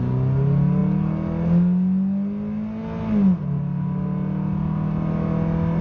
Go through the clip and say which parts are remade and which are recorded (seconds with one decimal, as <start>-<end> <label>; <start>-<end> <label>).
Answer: 0.0-5.8 recorded